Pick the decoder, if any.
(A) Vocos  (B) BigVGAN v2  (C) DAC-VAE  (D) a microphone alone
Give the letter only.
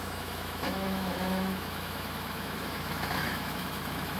C